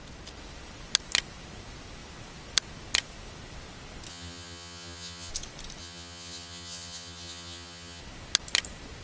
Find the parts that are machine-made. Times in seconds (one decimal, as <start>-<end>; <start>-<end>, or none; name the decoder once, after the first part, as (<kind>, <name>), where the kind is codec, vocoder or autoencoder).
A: 4.1-5.3 (vocoder, HiFi-GAN); 5.8-8.0